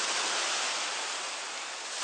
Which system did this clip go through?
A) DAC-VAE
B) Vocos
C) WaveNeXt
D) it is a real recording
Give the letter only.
D